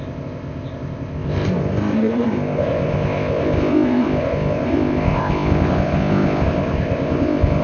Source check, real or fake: fake